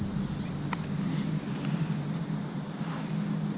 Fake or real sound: real